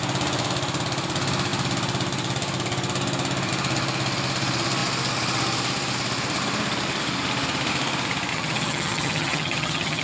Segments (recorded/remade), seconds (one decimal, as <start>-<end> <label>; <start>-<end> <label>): 0.0-8.3 recorded; 8.3-10.0 remade